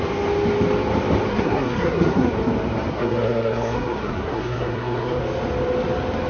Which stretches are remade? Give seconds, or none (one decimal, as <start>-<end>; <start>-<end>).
1.3-2.3; 2.9-5.2